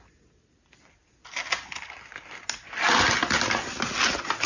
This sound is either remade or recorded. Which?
recorded